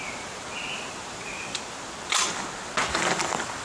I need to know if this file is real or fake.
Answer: real